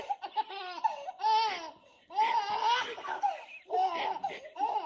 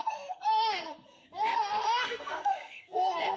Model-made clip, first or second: second